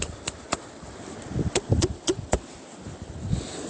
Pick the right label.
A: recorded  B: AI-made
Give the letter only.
A